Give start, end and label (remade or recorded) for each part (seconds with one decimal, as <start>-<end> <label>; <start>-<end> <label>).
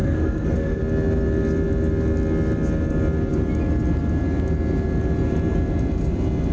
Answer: 0.0-0.8 remade; 0.8-6.5 recorded